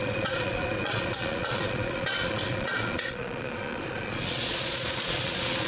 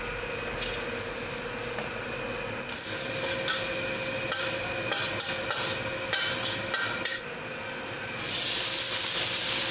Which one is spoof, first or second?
first